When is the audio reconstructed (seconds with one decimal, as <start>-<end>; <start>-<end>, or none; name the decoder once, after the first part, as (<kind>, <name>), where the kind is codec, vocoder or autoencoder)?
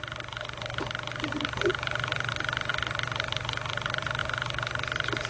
none